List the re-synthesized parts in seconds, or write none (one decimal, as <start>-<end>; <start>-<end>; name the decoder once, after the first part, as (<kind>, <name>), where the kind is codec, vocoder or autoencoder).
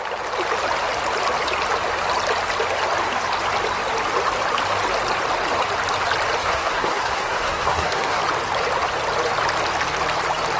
6.4-8.2 (codec, SNAC)